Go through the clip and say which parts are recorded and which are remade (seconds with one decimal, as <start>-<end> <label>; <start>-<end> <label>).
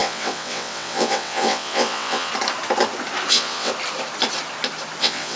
0.0-2.3 remade; 2.3-3.3 recorded; 3.3-3.7 remade; 3.7-5.0 recorded; 5.0-5.4 remade